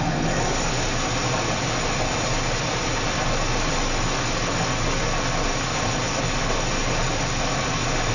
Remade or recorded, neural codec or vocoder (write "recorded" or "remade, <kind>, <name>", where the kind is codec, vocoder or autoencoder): recorded